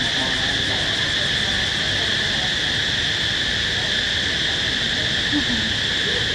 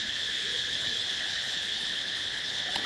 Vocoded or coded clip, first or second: second